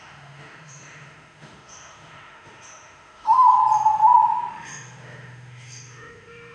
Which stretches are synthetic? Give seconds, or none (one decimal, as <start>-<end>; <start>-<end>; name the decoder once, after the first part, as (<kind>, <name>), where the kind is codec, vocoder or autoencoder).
0.0-3.6 (autoencoder, DAC-VAE); 4.5-6.5